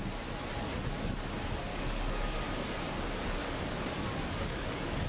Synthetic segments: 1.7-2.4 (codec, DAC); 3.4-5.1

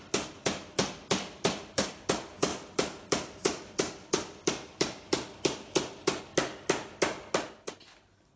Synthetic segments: 1.2-1.9 (vocoder, BigVGAN v2); 2.5-6.2

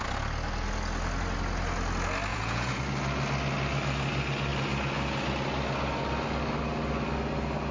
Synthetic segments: 2.3-2.8 (vocoder, Vocos)

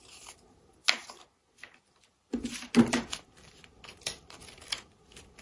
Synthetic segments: none

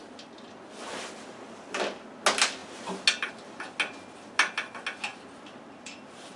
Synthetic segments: none

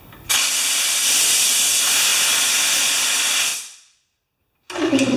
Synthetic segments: none